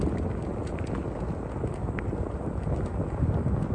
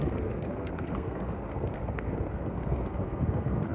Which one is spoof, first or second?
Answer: second